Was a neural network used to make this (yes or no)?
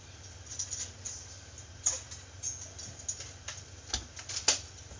no